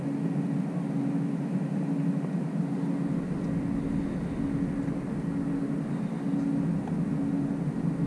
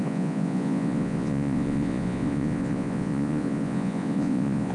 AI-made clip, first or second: second